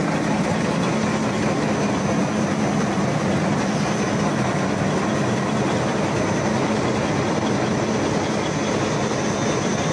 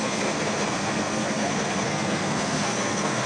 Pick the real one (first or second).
first